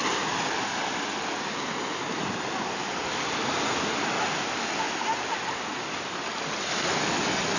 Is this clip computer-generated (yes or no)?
no